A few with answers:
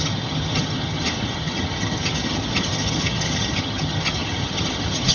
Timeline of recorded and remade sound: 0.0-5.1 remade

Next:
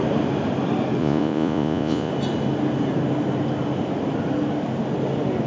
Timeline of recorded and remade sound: 0.0-1.0 recorded; 1.0-2.1 remade; 2.1-5.5 recorded

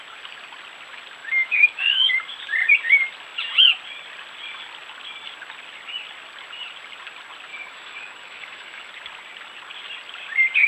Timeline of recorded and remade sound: 0.0-1.2 recorded; 1.2-2.1 remade; 2.1-7.5 recorded; 7.5-8.9 remade; 8.9-10.7 recorded

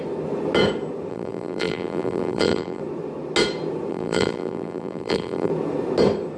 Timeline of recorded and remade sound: 0.0-1.1 recorded; 1.1-2.8 remade; 2.8-3.9 recorded; 3.9-5.5 remade; 5.5-6.4 recorded

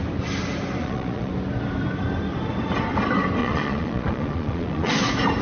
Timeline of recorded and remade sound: 0.0-0.8 recorded; 0.8-1.3 remade; 1.3-3.4 recorded; 3.4-4.9 remade; 4.9-5.4 recorded

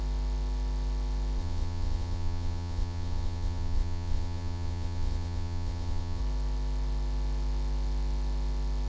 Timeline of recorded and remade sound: 0.0-1.4 recorded; 1.4-6.2 remade; 6.2-8.9 recorded

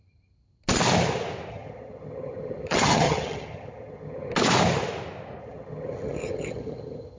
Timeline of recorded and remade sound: 0.0-1.5 recorded; 1.5-4.3 remade; 4.3-5.4 recorded; 5.4-7.2 remade